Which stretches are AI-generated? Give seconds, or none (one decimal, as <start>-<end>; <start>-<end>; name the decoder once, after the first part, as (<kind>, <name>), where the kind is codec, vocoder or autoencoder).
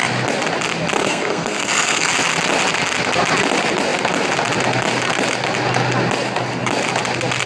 1.0-2.1 (codec, SNAC)